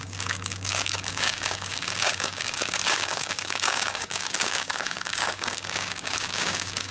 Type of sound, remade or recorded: remade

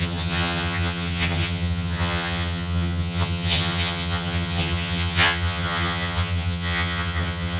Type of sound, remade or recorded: remade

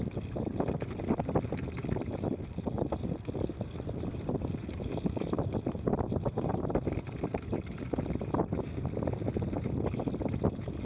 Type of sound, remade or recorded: recorded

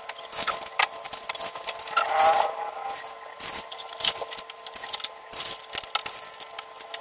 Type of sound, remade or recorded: recorded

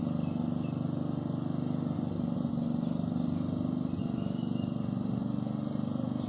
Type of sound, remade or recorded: recorded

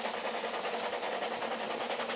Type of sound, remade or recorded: recorded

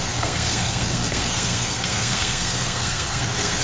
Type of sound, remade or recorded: remade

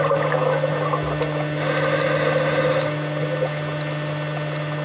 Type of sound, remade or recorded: recorded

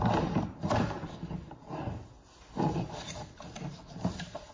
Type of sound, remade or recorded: recorded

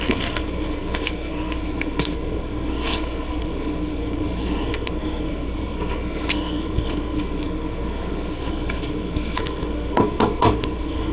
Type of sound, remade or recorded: remade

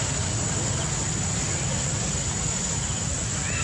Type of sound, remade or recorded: recorded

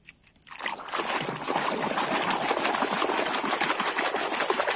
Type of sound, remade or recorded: recorded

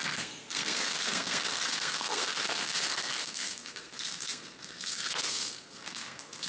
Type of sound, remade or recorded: remade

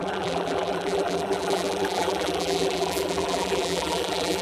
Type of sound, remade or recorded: remade